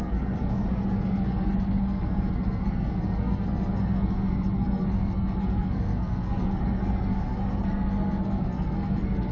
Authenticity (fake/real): fake